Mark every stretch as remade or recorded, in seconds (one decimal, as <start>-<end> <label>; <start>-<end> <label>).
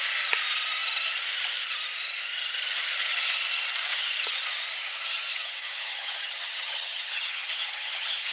0.0-4.8 recorded; 4.8-8.3 remade